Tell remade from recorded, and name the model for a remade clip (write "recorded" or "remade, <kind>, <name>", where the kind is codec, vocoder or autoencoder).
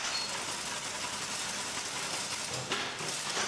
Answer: recorded